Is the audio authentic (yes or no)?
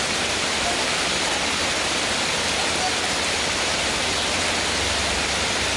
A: yes